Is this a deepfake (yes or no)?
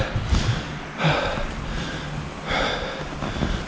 no